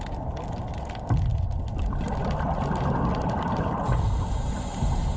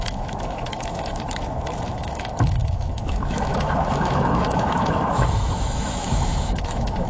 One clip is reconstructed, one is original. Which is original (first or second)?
first